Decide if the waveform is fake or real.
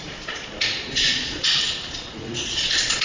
fake